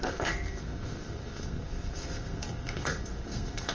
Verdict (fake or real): fake